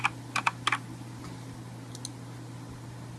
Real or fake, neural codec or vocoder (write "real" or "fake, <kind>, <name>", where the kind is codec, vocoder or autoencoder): real